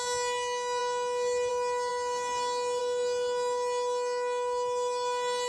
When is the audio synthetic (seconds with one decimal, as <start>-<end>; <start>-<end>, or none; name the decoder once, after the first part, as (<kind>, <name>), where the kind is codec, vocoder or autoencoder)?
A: none